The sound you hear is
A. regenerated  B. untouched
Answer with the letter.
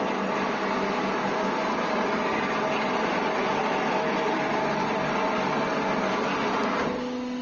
B